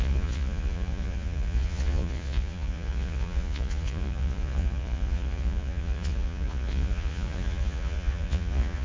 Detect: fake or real fake